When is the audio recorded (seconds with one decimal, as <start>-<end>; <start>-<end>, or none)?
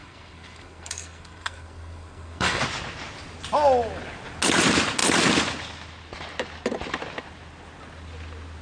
2.6-8.6